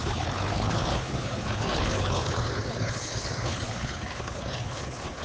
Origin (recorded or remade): remade